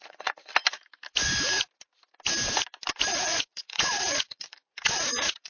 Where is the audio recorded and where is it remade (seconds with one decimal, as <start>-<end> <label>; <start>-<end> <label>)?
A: 0.0-0.5 remade; 0.5-3.1 recorded; 3.1-5.5 remade